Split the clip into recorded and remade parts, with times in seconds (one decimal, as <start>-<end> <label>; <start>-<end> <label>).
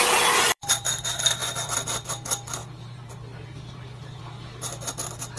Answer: 0.0-0.7 remade; 0.7-2.6 recorded; 2.6-4.2 remade; 4.2-5.4 recorded